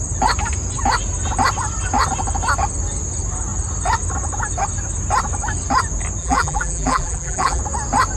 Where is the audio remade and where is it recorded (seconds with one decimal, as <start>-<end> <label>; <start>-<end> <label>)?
0.0-6.2 recorded; 6.2-7.6 remade; 7.6-8.2 recorded